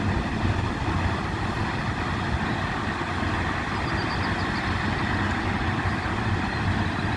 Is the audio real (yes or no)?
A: yes